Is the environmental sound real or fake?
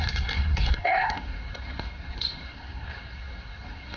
fake